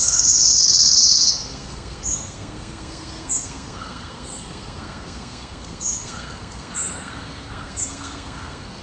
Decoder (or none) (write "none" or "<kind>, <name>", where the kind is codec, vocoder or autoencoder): codec, SNAC